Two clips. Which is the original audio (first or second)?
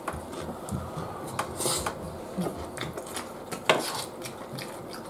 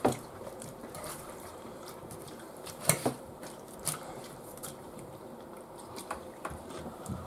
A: first